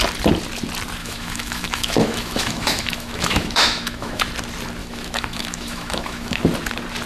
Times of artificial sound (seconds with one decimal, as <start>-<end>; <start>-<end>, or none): 1.0-4.2; 4.8-6.4